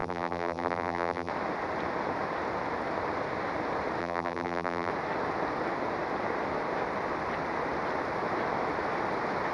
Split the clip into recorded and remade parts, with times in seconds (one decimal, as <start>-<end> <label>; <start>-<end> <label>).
0.0-1.3 remade; 1.3-4.0 recorded; 4.0-4.9 remade; 4.9-9.5 recorded